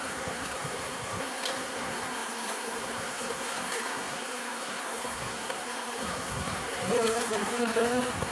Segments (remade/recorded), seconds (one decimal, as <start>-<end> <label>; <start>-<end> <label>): 0.0-8.3 remade